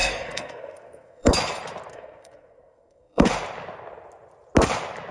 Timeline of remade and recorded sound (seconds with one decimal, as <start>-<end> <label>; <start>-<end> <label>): 0.0-1.3 remade; 1.3-1.9 recorded; 1.9-3.3 remade; 3.3-5.1 recorded